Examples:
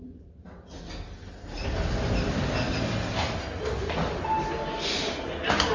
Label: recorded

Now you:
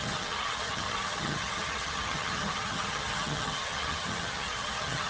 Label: remade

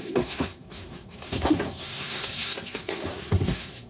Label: remade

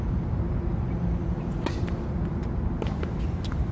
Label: recorded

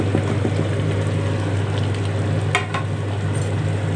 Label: recorded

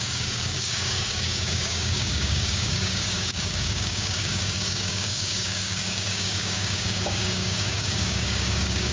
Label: remade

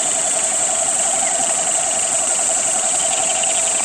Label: remade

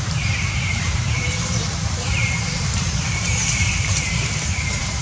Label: remade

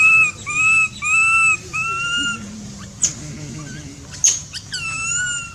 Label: recorded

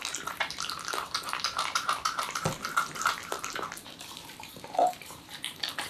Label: remade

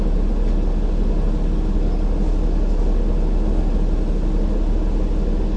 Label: recorded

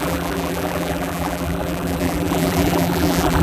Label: remade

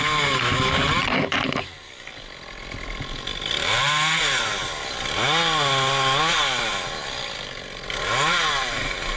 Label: recorded